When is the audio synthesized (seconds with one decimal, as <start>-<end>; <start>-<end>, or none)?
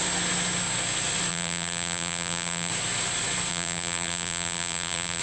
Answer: 1.3-2.7; 3.5-5.2